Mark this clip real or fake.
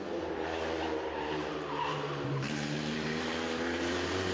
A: fake